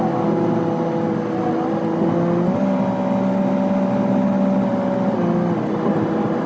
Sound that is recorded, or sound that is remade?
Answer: recorded